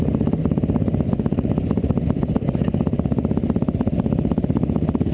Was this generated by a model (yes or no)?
yes